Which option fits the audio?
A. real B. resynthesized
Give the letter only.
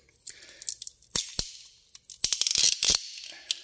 A